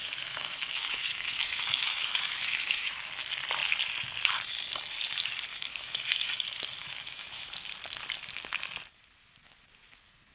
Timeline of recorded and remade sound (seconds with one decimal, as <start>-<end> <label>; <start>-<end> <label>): 0.0-3.1 remade; 3.1-5.5 recorded; 5.5-6.3 remade; 6.3-6.8 recorded; 6.8-7.5 remade; 7.5-10.3 recorded